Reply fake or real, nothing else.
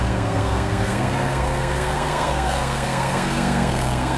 fake